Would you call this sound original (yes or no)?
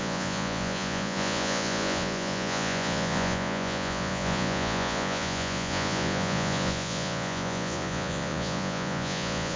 no